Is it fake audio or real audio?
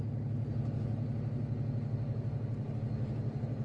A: real